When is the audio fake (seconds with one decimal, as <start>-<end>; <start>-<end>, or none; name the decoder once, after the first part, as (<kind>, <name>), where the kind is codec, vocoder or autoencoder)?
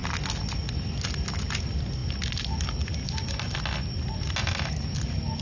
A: none